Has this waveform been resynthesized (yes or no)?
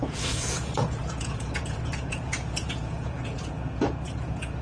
yes